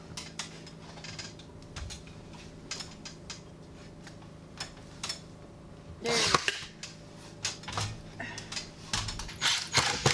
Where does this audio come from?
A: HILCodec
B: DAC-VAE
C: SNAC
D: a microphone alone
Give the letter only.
D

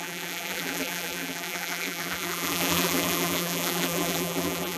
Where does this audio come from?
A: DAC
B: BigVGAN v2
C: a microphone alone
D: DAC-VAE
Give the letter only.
B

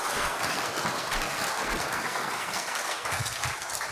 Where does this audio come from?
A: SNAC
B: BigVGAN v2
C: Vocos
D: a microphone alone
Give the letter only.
A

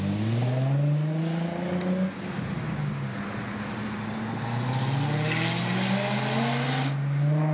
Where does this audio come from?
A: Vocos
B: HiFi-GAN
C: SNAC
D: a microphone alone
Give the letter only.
D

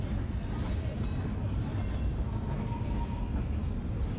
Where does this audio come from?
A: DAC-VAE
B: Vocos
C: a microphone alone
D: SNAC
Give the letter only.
C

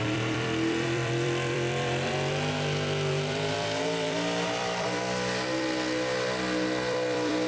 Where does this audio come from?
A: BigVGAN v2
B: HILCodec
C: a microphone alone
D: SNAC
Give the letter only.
A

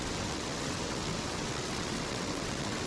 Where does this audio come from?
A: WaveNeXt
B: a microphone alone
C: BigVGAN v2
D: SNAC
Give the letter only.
A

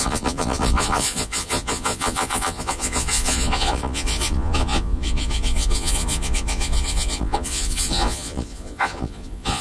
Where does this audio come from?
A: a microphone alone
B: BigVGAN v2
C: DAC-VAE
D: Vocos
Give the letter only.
D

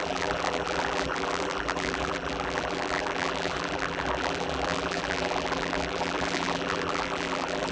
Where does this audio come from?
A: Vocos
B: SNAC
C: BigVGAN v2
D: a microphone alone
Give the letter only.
C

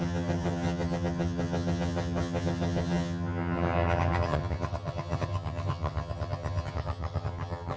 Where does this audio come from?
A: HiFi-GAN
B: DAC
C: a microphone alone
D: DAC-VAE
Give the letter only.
A